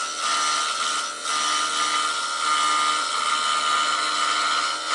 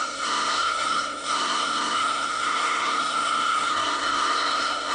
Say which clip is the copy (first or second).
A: second